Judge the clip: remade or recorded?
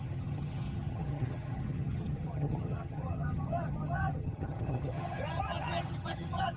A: remade